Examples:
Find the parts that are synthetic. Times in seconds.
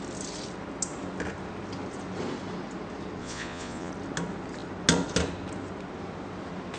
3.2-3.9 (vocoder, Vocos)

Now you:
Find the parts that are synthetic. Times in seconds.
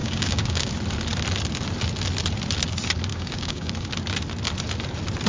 0.0-0.7 (codec, DAC); 3.1-3.7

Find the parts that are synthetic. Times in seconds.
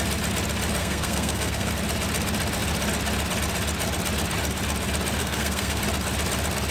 0.8-1.7 (codec, SNAC); 5.2-5.8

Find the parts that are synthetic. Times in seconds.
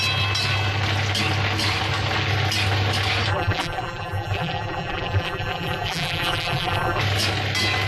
3.3-7.0 (vocoder, BigVGAN v2)